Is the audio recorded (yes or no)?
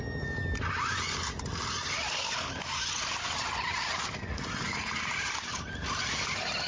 yes